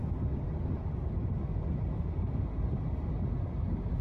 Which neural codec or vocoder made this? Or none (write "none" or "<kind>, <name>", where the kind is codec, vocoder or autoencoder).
none